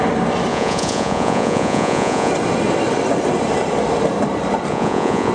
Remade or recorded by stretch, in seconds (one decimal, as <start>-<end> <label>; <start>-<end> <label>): 0.0-0.5 recorded; 0.5-2.3 remade; 2.3-4.7 recorded; 4.7-5.3 remade